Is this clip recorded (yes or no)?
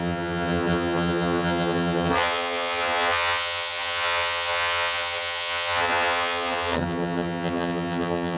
no